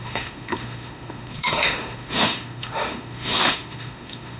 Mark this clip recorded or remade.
remade